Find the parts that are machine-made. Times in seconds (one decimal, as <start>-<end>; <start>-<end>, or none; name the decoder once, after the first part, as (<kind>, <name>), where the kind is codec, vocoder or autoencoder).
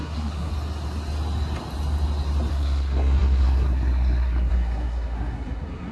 0.0-0.5 (codec, SNAC); 2.5-5.9